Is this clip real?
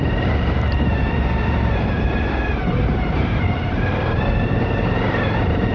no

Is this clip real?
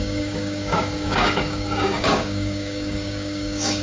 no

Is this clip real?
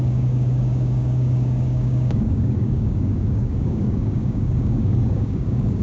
no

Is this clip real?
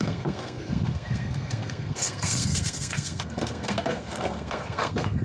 no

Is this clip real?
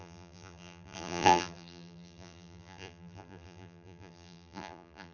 no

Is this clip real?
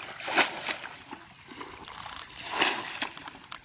yes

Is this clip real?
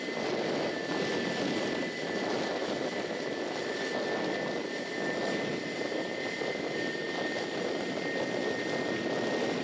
yes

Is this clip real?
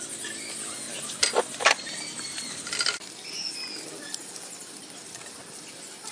yes